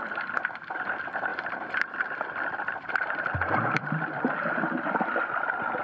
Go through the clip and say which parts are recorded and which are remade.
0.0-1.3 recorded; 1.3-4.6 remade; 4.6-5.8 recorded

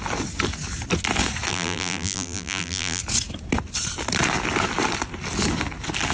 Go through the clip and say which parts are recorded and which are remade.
0.0-1.5 recorded; 1.5-3.0 remade; 3.0-6.1 recorded

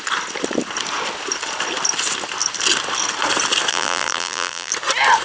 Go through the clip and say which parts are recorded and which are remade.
0.0-3.7 recorded; 3.7-4.7 remade; 4.7-5.2 recorded

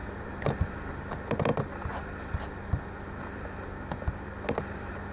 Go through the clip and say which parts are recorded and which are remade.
0.0-1.0 remade; 1.0-5.1 recorded

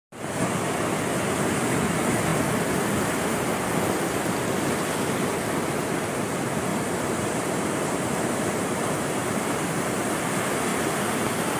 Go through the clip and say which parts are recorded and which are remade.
0.0-6.7 recorded; 6.7-10.2 remade; 10.2-11.6 recorded

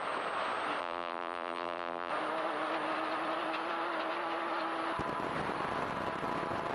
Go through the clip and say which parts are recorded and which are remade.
0.0-0.8 recorded; 0.8-2.1 remade; 2.1-6.7 recorded

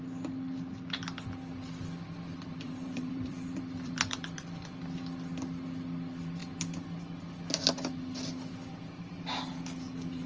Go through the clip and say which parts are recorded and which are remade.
0.0-2.3 recorded; 2.3-4.6 remade; 4.6-10.3 recorded